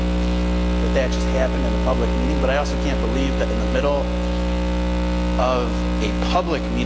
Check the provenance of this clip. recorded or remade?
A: recorded